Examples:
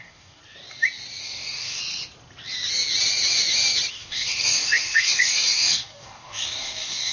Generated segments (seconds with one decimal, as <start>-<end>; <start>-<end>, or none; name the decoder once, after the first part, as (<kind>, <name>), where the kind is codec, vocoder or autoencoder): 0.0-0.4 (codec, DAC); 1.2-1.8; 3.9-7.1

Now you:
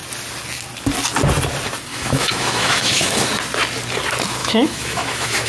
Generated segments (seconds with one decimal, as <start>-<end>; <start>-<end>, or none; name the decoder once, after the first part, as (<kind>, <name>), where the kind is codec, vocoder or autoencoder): 1.9-3.3 (autoencoder, DAC-VAE); 4.4-5.5

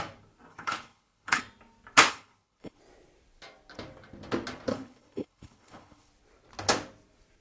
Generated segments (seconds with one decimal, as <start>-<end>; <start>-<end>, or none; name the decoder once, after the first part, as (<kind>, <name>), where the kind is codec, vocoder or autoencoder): 0.5-1.4 (codec, HILCodec); 2.1-2.8; 4.7-6.1